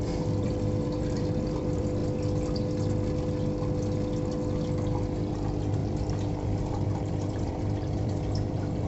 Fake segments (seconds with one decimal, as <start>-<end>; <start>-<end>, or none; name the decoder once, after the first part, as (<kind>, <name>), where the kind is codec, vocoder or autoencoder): 0.0-2.0 (vocoder, BigVGAN v2); 5.3-8.9